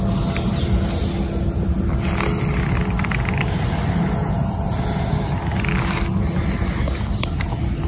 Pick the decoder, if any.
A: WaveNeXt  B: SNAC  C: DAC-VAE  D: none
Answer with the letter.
D